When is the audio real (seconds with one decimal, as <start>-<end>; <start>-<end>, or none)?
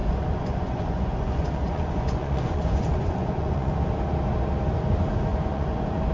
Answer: 3.7-5.3